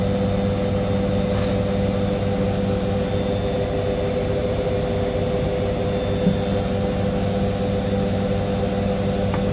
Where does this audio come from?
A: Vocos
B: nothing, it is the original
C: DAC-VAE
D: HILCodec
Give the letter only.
B